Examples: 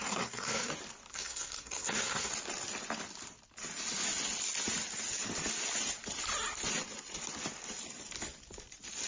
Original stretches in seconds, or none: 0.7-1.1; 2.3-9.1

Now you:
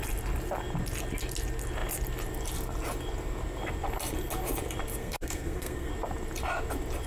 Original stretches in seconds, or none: 0.0-5.0; 5.9-7.1